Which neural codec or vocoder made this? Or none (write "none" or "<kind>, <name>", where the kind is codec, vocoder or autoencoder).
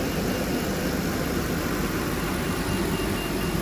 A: none